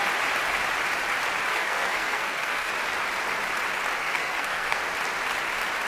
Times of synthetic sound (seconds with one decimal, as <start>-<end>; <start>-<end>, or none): 1.5-2.7; 4.0-4.8